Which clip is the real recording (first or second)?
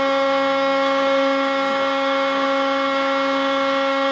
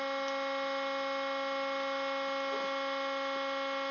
second